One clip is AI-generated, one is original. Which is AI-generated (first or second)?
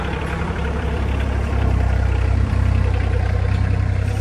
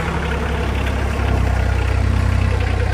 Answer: first